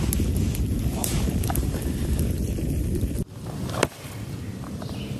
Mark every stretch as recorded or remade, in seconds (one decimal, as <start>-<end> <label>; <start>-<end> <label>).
0.0-1.0 recorded; 1.0-4.1 remade; 4.1-4.5 recorded; 4.5-5.2 remade